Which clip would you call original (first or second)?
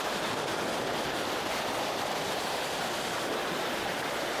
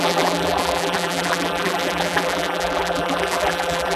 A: first